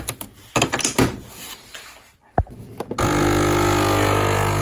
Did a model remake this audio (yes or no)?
no